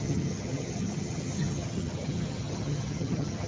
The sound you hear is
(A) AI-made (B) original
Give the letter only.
A